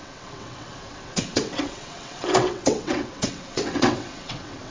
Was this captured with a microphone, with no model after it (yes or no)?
no